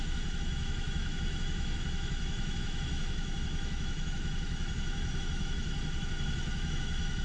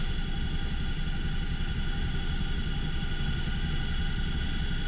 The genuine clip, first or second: second